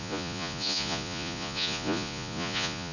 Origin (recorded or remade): remade